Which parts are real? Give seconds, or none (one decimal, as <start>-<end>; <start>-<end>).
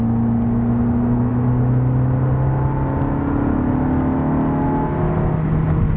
0.0-6.0